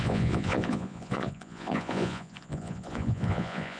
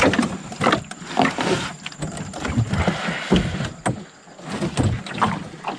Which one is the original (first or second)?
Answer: second